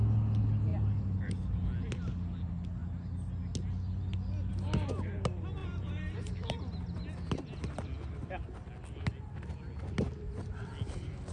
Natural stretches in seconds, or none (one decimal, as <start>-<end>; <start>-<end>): 0.0-0.7; 1.3-5.6; 6.8-11.3